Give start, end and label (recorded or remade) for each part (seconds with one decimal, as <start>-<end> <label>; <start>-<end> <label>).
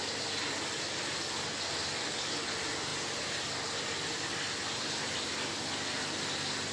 0.0-2.9 remade; 2.9-5.2 recorded; 5.2-6.7 remade